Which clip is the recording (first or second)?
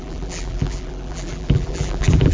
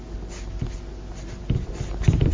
second